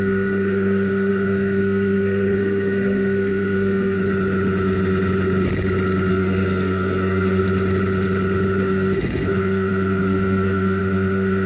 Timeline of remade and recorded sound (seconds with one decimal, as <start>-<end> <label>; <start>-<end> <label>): 0.0-4.0 remade; 4.0-6.1 recorded; 6.1-7.4 remade; 7.4-8.6 recorded; 8.6-11.5 remade